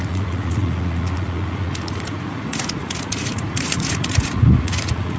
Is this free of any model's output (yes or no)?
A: no